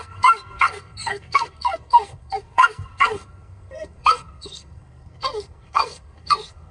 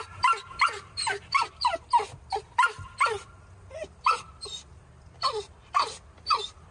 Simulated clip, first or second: first